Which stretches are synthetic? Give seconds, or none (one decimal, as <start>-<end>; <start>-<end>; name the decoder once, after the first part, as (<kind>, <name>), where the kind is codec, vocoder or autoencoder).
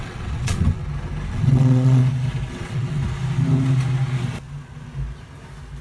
0.0-0.8 (vocoder, WaveNeXt); 1.3-2.0; 2.5-3.0